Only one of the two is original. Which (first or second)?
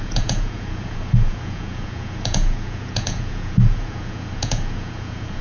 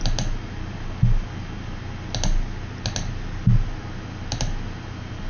second